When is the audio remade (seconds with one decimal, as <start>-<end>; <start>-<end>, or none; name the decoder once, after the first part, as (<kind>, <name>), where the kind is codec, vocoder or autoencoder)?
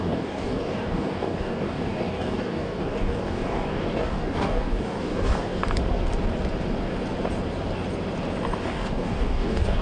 0.0-5.6 (codec, DAC); 8.6-9.8